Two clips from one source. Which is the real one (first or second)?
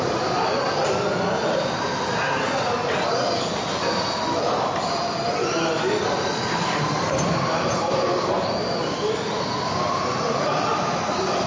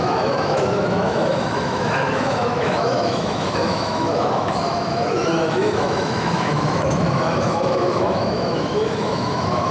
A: first